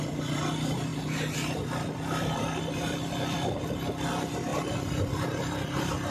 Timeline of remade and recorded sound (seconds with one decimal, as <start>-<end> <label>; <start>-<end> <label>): 0.0-6.1 remade